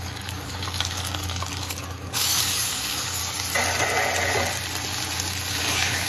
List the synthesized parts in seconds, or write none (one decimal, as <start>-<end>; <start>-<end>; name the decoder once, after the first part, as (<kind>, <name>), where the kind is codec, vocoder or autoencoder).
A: 0.0-3.2 (codec, DAC); 5.5-6.1